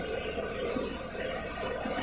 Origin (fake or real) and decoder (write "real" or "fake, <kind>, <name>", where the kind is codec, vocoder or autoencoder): real